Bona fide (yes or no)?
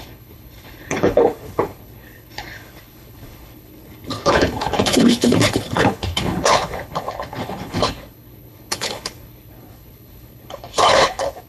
no